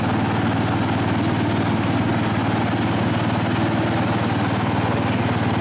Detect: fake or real real